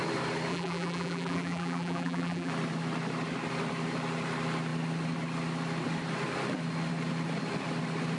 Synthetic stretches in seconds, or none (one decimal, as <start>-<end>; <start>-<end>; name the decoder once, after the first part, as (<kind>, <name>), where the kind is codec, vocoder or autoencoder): 0.5-2.5 (vocoder, BigVGAN v2)